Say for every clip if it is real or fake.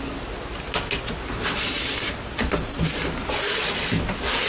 real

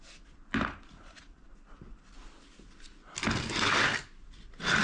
real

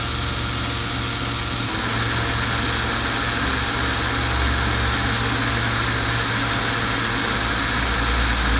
real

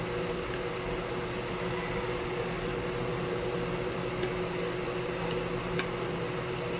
real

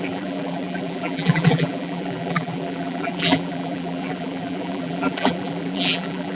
fake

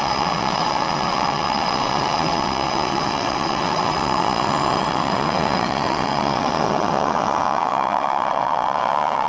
fake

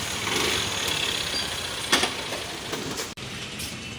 fake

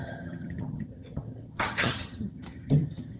fake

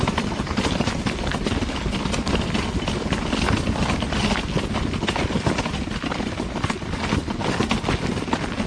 real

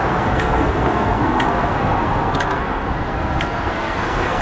fake